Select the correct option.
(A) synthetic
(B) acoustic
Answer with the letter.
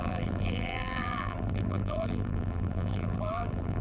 A